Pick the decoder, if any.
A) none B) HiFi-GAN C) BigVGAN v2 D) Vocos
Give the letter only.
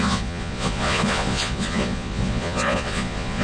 D